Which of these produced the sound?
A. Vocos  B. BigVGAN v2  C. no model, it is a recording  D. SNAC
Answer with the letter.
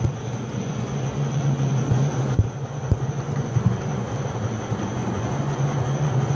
A